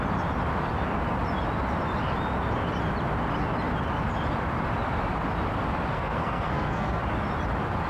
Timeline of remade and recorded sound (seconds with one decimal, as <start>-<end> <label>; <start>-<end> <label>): 0.0-5.9 recorded; 5.9-7.0 remade; 7.0-7.9 recorded